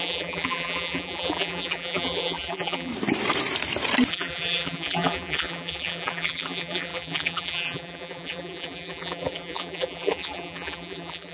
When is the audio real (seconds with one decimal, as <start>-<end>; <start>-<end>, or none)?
2.9-4.1